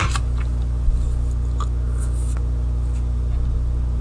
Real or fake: real